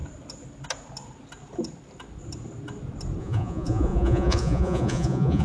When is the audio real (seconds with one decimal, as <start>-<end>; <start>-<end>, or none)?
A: 0.0-3.2